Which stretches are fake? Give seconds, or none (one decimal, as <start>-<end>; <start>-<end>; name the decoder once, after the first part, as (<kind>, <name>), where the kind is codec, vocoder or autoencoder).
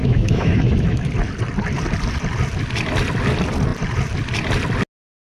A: 0.0-1.1 (autoencoder, DAC-VAE)